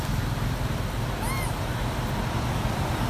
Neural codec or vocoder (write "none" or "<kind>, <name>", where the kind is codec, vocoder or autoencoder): none